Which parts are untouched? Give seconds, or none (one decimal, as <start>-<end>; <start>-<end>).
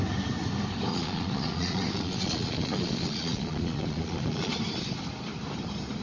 0.0-0.9; 4.5-6.0